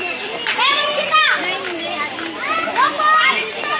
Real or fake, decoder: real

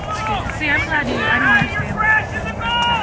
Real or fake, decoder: real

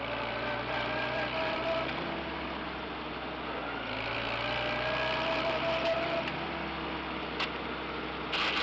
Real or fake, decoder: real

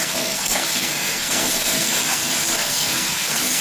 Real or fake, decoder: fake, codec, SNAC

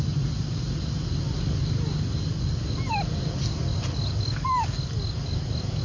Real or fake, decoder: real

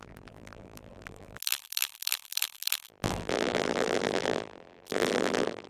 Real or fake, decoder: fake, vocoder, BigVGAN v2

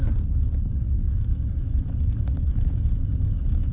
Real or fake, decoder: real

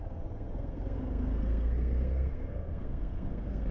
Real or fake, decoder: fake, codec, SNAC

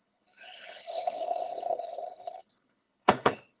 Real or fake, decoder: fake, codec, HILCodec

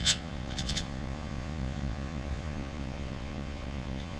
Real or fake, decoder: fake, vocoder, Vocos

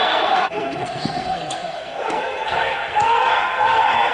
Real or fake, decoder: fake, codec, SNAC